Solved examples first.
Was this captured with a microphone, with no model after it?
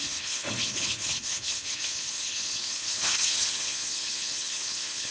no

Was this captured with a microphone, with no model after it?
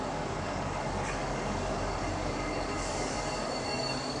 no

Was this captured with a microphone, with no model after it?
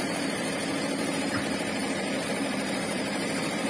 no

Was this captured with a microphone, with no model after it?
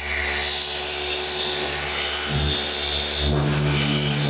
yes